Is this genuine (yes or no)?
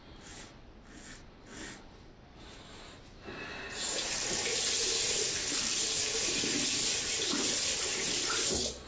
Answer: yes